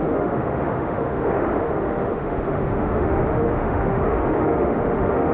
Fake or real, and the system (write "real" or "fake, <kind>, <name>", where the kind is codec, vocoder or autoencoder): fake, autoencoder, DAC-VAE